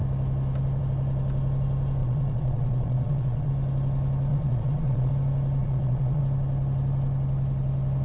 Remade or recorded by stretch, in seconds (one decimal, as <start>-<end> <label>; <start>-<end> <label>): 0.0-2.0 recorded; 2.0-3.5 remade; 3.5-4.3 recorded; 4.3-5.1 remade; 5.1-5.6 recorded; 5.6-6.2 remade; 6.2-8.0 recorded